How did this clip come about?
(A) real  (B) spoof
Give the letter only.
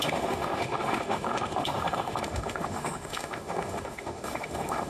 B